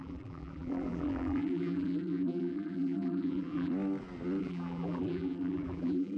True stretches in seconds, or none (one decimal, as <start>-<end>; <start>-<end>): 3.7-4.4